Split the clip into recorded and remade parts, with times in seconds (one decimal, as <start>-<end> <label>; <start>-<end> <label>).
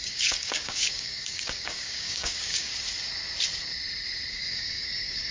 0.0-2.7 remade; 2.7-4.3 recorded; 4.3-5.3 remade